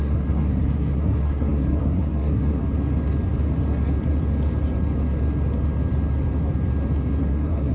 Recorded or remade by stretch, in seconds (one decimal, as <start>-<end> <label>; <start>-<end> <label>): 0.0-2.6 remade; 2.6-7.2 recorded; 7.2-7.7 remade